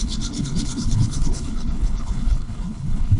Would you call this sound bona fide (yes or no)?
no